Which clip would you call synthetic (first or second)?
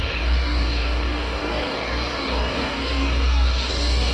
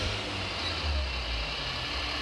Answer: first